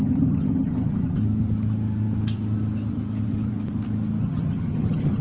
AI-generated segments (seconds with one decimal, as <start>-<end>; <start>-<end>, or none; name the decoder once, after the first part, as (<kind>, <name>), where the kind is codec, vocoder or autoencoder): 0.0-1.2 (vocoder, HiFi-GAN); 4.2-5.2